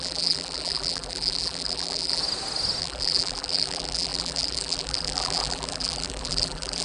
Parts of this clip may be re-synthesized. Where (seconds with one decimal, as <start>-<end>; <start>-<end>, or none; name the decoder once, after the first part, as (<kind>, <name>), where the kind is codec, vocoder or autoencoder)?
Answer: 0.0-2.2 (vocoder, BigVGAN v2); 2.8-6.8